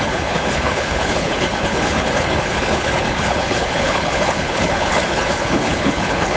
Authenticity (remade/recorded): remade